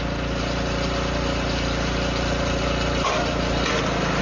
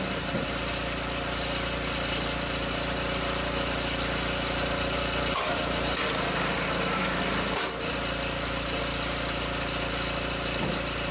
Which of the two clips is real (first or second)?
first